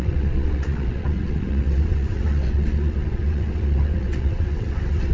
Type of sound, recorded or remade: remade